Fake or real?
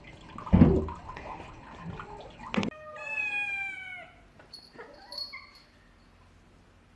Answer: real